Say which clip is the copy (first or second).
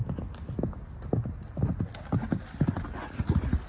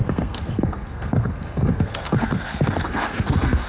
second